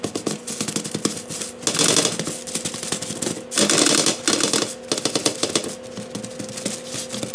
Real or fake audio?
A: real